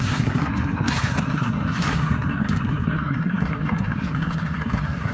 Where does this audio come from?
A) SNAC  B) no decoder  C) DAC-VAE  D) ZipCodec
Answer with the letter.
A